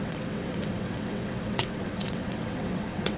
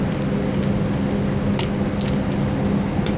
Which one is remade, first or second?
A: first